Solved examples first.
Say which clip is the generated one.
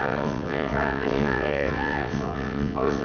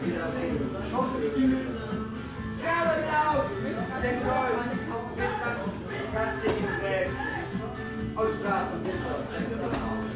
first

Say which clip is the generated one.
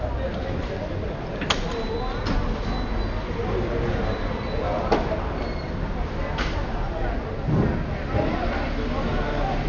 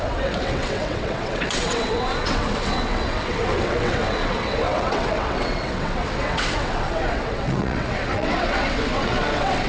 second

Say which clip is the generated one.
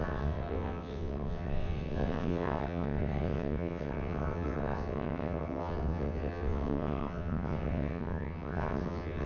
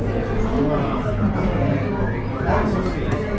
first